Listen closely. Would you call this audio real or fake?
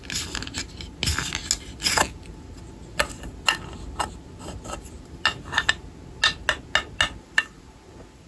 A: real